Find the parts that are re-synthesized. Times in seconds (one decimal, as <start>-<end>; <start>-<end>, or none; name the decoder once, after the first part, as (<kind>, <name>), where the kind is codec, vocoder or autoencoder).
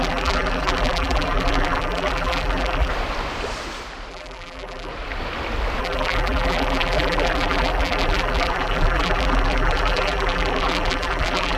0.0-2.9 (vocoder, BigVGAN v2); 4.1-4.9; 5.8-11.6